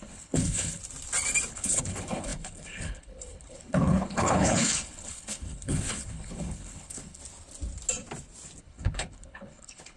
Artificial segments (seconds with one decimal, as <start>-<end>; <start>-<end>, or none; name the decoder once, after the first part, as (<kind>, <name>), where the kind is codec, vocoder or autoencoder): 0.0-0.8 (codec, HILCodec); 1.5-7.2; 8.6-10.0